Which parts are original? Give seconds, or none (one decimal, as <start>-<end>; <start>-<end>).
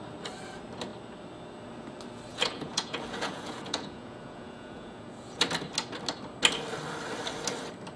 0.0-2.3; 5.4-8.0